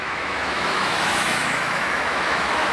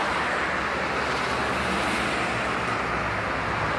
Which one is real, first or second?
second